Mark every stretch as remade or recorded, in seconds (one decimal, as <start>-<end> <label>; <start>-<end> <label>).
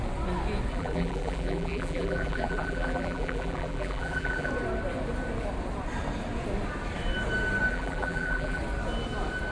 0.0-0.7 recorded; 0.7-4.5 remade; 4.5-7.7 recorded; 7.7-8.6 remade; 8.6-9.5 recorded